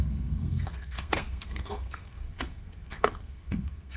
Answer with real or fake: fake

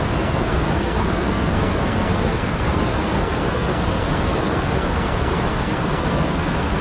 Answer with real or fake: fake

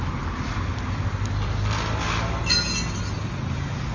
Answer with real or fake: real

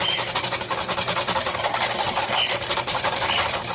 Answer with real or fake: real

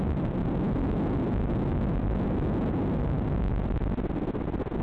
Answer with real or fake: real